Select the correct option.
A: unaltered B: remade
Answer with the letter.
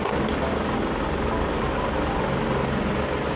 A